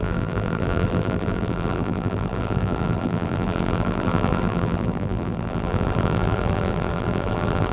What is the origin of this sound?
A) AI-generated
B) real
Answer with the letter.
A